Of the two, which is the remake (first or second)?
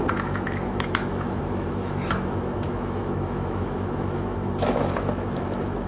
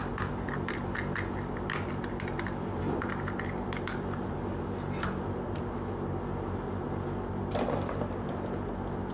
first